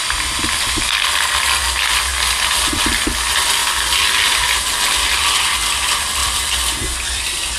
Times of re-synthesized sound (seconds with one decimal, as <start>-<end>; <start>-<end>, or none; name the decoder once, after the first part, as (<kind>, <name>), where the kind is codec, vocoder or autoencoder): 6.2-7.6 (vocoder, BigVGAN v2)